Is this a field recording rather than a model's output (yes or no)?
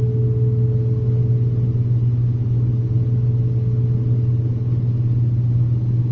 yes